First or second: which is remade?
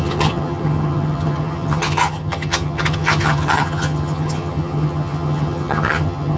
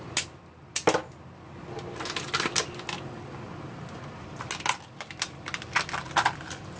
first